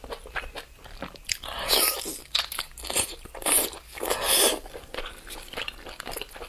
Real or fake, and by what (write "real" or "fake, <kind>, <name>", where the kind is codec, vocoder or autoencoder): real